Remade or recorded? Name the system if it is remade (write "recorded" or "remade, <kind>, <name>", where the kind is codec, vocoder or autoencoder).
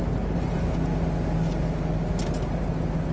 recorded